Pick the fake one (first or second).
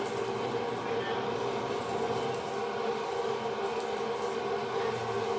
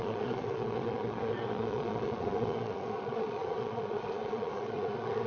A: second